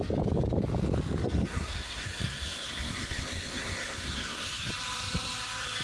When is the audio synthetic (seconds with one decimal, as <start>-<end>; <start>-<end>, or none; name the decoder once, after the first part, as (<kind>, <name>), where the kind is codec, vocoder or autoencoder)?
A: 1.2-4.7 (codec, SNAC)